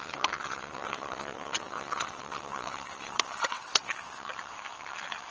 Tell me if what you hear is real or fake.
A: fake